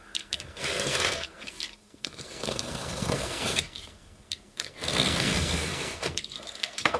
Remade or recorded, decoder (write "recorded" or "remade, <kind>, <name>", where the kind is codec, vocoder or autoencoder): remade, codec, SNAC